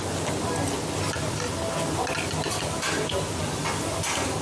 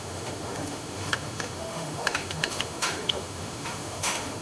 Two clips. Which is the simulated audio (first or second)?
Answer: second